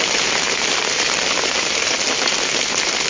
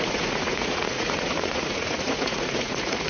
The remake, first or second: second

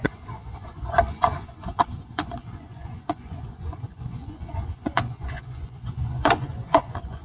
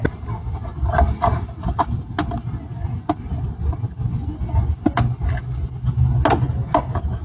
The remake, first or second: first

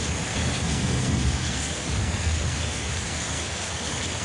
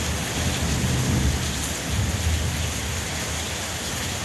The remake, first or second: first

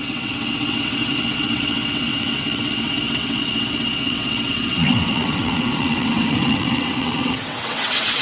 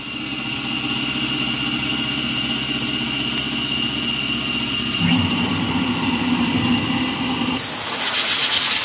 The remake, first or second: first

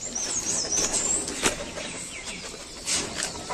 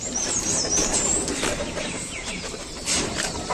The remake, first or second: second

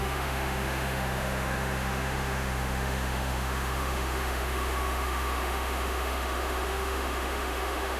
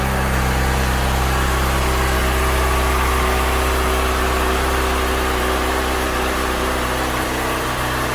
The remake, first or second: first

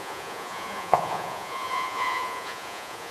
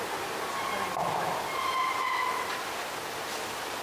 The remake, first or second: first